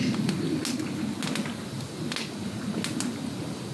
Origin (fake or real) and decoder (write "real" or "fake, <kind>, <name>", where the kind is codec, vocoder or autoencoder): real